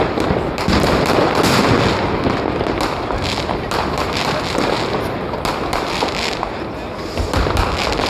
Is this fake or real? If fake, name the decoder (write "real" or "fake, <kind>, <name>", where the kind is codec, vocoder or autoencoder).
real